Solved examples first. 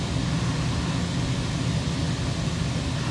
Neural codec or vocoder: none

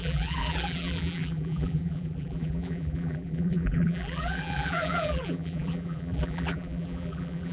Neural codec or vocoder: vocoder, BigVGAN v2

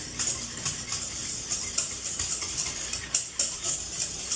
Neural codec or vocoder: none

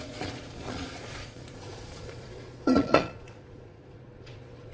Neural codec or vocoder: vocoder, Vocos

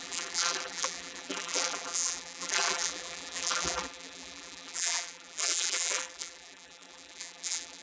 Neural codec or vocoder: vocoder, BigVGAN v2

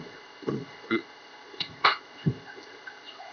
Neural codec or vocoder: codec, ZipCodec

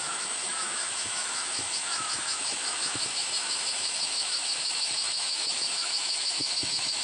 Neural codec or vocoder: autoencoder, DAC-VAE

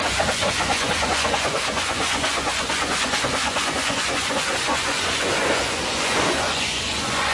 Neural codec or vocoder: vocoder, Vocos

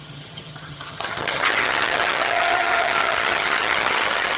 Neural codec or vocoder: vocoder, HiFi-GAN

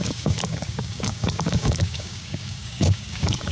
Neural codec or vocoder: codec, DAC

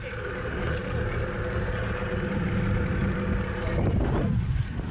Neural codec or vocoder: none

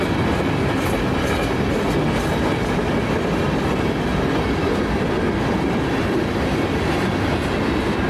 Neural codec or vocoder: none